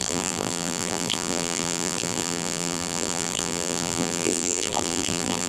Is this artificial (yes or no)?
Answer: yes